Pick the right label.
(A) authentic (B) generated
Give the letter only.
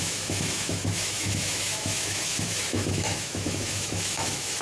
B